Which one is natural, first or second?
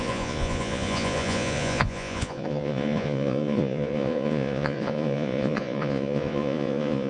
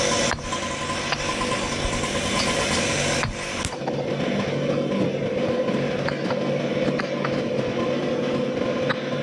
second